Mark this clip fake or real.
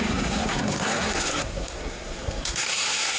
fake